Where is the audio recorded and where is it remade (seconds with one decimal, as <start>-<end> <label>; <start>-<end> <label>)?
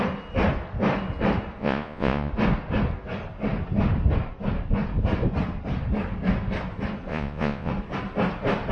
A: 0.0-1.6 recorded; 1.6-2.3 remade; 2.3-7.1 recorded; 7.1-7.7 remade; 7.7-8.7 recorded